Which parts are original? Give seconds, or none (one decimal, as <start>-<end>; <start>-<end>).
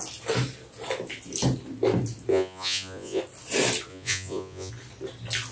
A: 0.0-2.3; 3.2-3.9; 4.7-5.5